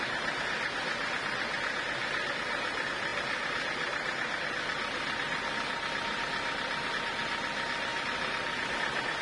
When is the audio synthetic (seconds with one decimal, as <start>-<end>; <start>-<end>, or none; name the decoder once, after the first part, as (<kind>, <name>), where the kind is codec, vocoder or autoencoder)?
none